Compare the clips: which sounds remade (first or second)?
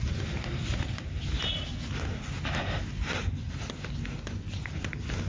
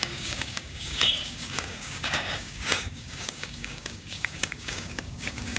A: second